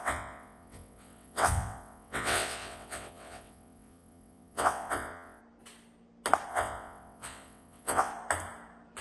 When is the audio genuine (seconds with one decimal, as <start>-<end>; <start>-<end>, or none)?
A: 5.4-6.5; 8.1-9.0